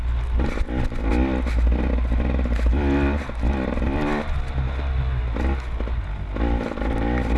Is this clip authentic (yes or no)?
yes